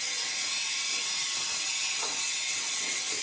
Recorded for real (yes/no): no